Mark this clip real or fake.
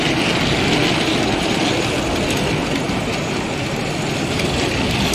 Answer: real